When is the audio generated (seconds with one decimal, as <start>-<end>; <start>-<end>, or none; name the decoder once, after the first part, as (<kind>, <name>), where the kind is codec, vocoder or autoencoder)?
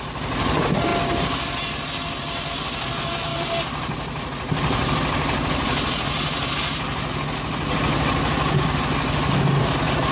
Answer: none